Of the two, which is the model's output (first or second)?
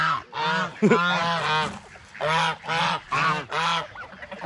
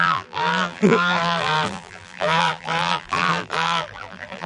second